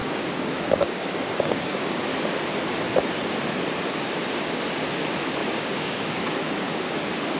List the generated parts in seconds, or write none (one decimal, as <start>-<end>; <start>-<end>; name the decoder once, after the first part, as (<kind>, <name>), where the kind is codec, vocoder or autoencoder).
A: 0.0-2.0 (codec, DAC); 5.4-6.9